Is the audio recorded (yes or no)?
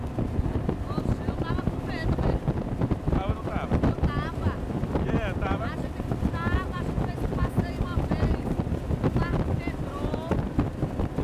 yes